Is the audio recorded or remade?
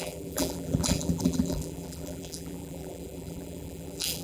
remade